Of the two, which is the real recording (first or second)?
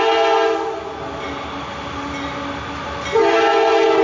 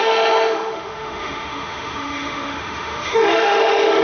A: first